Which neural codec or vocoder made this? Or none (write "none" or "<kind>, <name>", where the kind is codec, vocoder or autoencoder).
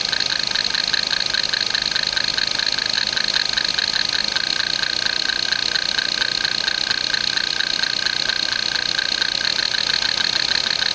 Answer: none